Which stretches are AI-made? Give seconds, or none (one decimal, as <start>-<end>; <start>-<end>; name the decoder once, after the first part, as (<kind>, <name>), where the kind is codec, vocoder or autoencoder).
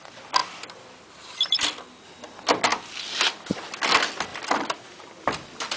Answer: 0.4-2.1 (vocoder, BigVGAN v2); 2.7-3.3; 4.3-5.2